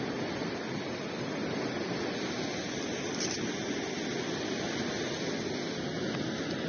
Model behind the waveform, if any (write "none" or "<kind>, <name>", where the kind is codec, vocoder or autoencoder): none